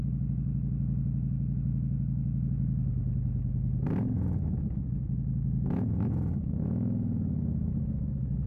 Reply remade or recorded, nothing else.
remade